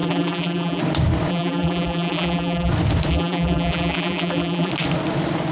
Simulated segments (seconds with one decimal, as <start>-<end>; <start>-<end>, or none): 0.0-0.8; 1.3-2.7; 3.1-4.7